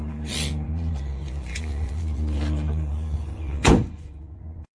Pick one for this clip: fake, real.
fake